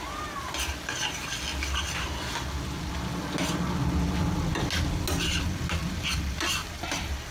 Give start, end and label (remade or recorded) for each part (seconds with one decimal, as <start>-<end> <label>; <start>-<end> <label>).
0.0-7.3 recorded

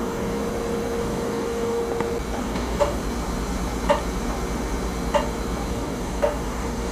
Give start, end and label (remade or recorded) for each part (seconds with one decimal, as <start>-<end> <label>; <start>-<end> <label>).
0.0-0.4 remade; 0.4-1.0 recorded; 1.0-1.8 remade; 1.8-2.4 recorded; 2.4-3.0 remade; 3.0-5.7 recorded; 5.7-6.9 remade

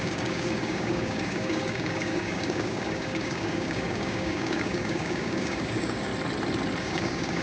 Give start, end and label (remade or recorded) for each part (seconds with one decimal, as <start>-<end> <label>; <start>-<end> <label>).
0.0-6.1 remade; 6.1-6.8 recorded; 6.8-7.4 remade

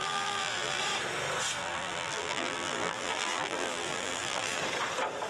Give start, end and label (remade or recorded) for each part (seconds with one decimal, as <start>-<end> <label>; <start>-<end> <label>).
0.0-0.8 remade; 0.8-1.6 recorded; 1.6-4.6 remade; 4.6-5.3 recorded